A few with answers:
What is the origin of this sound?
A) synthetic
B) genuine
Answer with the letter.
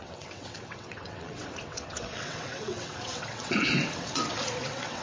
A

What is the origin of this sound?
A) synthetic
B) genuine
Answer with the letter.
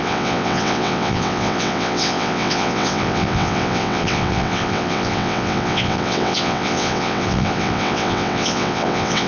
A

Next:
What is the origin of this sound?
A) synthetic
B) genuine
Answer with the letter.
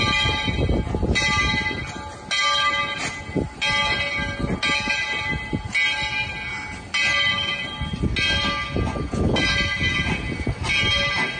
B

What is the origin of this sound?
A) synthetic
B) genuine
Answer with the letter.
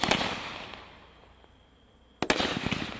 B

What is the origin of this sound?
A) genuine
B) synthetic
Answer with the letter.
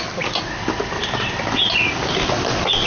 A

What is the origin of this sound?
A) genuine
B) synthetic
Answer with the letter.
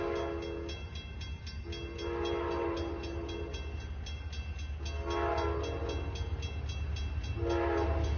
A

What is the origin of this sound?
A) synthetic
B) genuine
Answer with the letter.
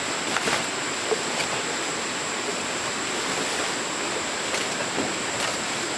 B